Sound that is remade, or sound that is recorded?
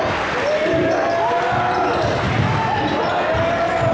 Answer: recorded